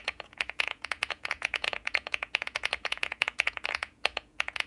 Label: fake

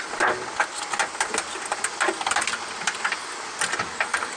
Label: real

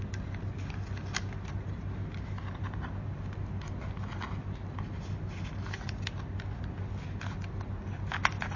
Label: real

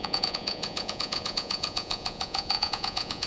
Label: fake